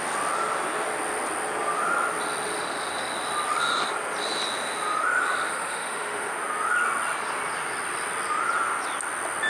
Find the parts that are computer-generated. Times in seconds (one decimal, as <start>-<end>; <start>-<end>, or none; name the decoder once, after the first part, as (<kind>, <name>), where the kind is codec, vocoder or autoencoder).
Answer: 5.5-6.3 (autoencoder, DAC-VAE)